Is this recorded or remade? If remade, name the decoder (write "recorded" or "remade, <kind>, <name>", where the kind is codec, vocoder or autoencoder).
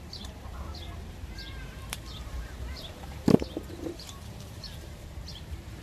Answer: remade, vocoder, BigVGAN v2